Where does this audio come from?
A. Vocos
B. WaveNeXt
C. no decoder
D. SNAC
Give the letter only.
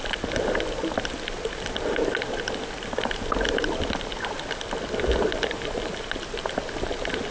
C